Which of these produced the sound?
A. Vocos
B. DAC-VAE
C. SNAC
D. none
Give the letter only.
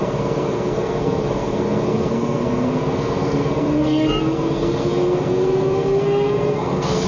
C